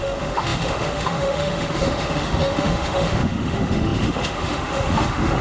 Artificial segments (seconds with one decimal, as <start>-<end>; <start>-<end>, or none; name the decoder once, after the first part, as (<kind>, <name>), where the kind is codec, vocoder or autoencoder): 0.0-5.4 (autoencoder, DAC-VAE)

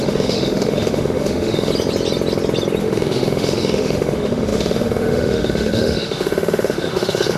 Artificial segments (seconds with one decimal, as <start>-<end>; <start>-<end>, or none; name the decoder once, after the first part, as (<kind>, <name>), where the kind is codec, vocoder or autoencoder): 0.0-1.7 (autoencoder, DAC-VAE); 2.8-7.4

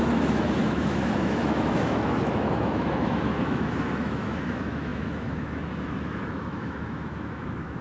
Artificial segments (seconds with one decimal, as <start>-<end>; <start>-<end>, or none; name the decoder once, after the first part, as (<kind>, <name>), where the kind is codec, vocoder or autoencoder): 0.0-7.8 (autoencoder, DAC-VAE)

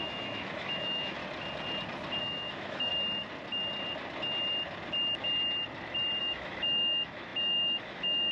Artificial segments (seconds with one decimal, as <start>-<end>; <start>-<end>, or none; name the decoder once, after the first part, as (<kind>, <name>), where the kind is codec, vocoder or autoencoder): 0.0-1.2 (autoencoder, DAC-VAE); 2.2-2.9; 6.2-8.3

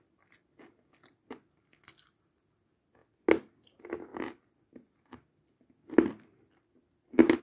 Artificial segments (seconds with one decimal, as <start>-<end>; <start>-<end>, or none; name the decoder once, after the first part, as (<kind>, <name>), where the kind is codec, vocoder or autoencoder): none

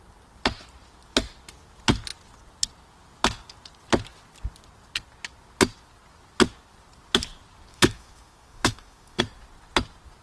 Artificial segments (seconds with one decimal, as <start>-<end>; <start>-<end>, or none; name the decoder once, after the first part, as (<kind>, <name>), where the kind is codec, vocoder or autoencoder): 7.7-9.2 (autoencoder, DAC-VAE)

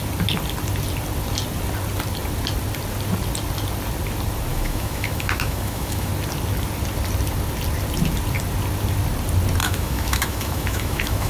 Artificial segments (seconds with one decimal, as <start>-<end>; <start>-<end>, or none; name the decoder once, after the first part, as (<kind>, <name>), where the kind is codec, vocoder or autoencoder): 4.5-6.1 (autoencoder, DAC-VAE); 9.6-11.3

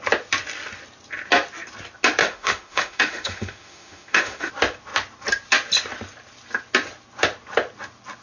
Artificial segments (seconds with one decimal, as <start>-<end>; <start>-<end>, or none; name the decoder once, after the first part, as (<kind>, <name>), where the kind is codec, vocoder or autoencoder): 2.2-4.5 (autoencoder, DAC-VAE)